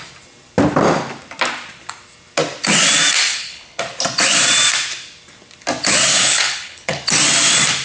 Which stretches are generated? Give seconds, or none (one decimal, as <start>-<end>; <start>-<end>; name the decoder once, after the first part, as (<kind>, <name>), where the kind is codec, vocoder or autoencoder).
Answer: 3.3-3.8 (codec, HILCodec); 6.1-7.0